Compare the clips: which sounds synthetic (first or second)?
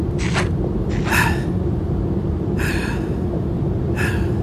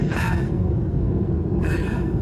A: second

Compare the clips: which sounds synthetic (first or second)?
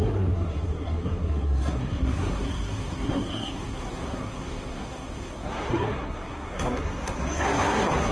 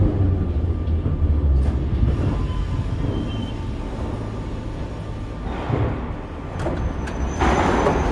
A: first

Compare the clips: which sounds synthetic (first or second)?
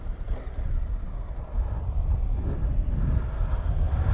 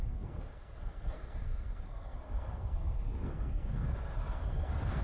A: second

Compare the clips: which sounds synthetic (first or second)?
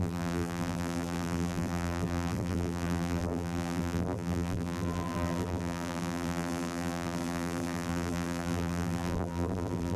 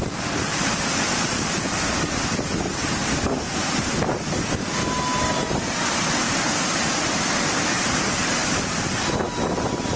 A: first